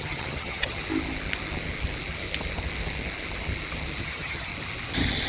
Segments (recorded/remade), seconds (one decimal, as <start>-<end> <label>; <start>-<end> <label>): 0.0-0.8 remade; 0.8-4.0 recorded; 4.0-4.5 remade; 4.5-5.3 recorded